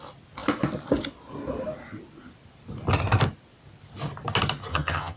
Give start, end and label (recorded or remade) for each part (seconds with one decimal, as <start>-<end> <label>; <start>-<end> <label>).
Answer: 0.0-4.7 recorded; 4.7-5.2 remade